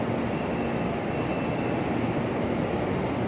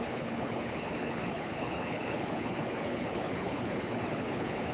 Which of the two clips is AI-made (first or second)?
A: second